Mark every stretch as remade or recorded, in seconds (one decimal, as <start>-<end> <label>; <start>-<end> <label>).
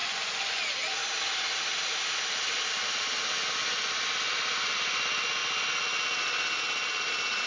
0.0-0.6 remade; 0.6-7.5 recorded